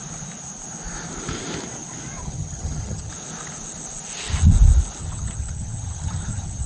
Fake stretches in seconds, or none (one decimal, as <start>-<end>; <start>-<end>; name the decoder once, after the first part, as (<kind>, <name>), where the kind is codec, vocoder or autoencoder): 2.2-3.1 (vocoder, HiFi-GAN); 5.0-6.7